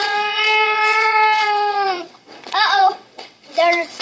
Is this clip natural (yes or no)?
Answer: no